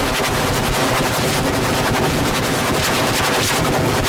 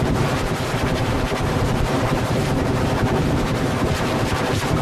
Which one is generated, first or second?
second